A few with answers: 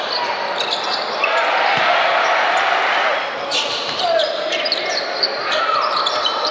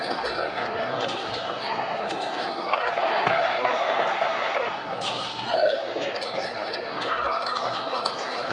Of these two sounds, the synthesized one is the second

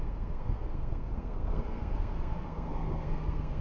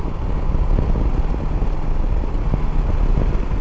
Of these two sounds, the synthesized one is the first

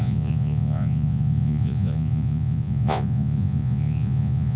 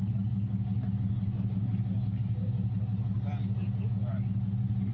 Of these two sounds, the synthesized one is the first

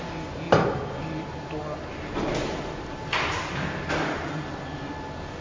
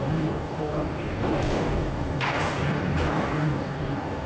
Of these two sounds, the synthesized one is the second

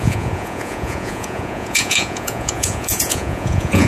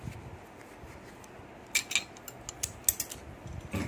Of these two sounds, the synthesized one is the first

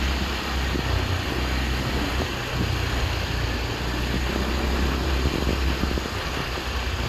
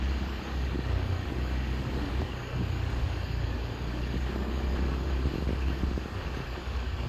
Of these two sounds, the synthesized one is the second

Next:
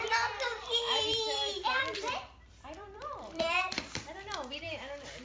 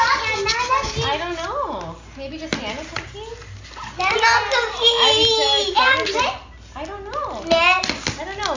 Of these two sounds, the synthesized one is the first